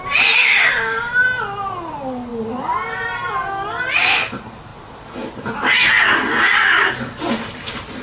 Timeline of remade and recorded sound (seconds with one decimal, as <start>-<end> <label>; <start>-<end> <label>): 0.0-8.0 recorded